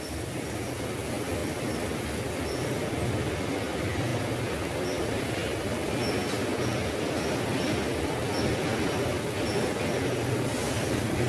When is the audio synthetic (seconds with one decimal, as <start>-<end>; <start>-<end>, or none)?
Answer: none